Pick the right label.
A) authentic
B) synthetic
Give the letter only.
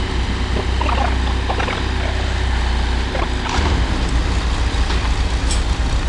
A